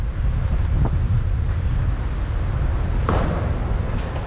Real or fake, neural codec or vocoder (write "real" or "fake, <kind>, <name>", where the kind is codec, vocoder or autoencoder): real